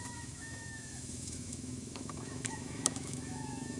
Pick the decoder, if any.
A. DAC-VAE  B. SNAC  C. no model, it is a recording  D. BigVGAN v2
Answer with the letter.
A